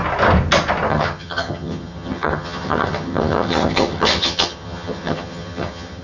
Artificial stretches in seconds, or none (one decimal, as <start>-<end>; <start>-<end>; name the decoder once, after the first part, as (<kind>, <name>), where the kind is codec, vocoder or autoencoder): 0.9-6.0 (vocoder, HiFi-GAN)